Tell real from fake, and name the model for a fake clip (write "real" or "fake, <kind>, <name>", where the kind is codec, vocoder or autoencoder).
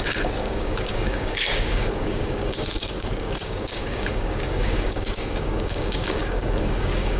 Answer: fake, codec, DAC